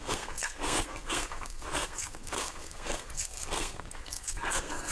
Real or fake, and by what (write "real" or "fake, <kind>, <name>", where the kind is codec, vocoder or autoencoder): fake, codec, SNAC